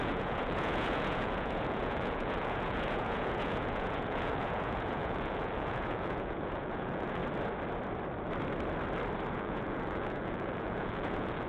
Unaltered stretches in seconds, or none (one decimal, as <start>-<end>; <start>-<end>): 7.2-9.3